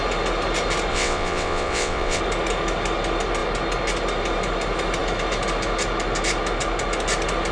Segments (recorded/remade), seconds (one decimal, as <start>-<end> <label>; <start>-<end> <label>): 0.0-0.9 recorded; 0.9-2.2 remade; 2.2-7.5 recorded